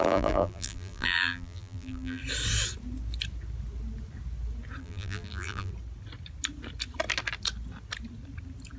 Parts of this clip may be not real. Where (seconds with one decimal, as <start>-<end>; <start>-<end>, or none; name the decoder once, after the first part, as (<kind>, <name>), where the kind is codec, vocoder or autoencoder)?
0.0-2.2 (vocoder, BigVGAN v2); 4.8-5.7